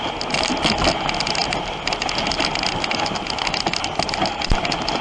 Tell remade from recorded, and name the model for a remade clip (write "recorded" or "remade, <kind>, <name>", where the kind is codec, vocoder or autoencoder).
recorded